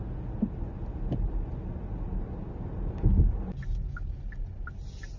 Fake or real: real